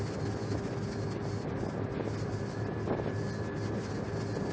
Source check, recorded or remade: recorded